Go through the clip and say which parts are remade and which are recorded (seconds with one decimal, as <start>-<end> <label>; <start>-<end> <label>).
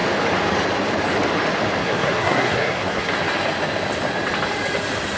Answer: 0.0-1.8 recorded; 1.8-3.1 remade; 3.1-5.2 recorded